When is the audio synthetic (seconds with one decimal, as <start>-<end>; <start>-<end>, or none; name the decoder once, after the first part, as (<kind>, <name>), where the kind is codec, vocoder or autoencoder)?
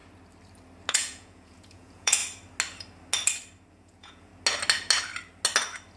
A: 0.9-2.2 (vocoder, Vocos); 3.7-4.3